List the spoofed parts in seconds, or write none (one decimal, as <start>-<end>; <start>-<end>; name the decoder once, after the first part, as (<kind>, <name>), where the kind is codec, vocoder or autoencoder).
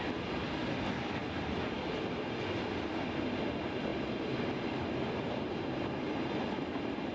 none